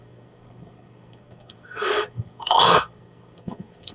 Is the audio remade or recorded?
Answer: remade